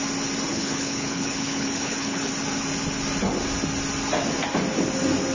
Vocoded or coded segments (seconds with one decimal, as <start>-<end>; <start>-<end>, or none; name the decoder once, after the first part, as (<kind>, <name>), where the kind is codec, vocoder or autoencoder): 0.5-2.3 (codec, HILCodec)